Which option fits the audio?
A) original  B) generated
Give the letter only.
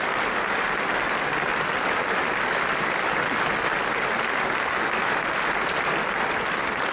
A